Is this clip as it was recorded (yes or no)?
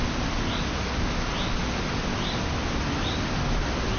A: yes